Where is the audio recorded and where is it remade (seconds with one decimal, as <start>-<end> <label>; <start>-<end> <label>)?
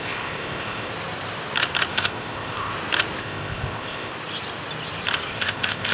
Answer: 0.0-0.9 remade; 0.9-1.9 recorded; 1.9-2.7 remade; 2.7-3.2 recorded; 3.2-4.1 remade; 4.1-5.3 recorded; 5.3-5.9 remade